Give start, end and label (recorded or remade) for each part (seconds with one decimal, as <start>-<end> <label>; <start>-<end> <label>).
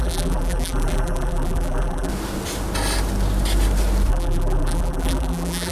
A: 0.0-2.1 remade; 2.1-4.1 recorded; 4.1-5.7 remade